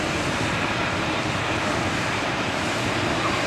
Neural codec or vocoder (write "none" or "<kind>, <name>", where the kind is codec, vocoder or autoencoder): vocoder, BigVGAN v2